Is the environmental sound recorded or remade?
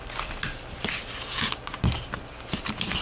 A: recorded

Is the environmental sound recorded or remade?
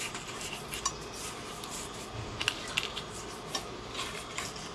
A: recorded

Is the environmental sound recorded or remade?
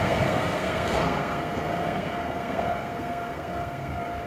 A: remade